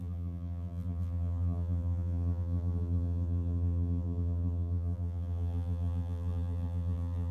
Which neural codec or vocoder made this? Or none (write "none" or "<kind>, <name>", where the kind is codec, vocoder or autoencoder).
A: vocoder, BigVGAN v2